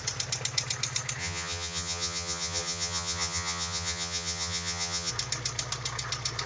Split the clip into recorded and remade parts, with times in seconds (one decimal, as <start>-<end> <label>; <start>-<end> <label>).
0.0-1.2 recorded; 1.2-5.1 remade; 5.1-6.5 recorded